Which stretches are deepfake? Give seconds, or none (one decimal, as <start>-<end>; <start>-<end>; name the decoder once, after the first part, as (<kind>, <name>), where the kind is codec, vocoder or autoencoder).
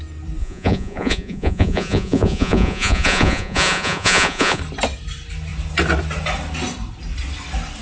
0.4-4.6 (vocoder, Vocos)